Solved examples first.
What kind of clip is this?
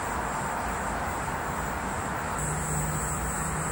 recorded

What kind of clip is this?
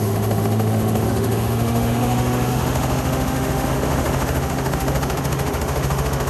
remade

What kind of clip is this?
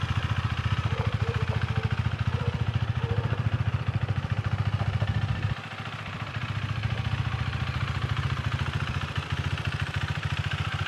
remade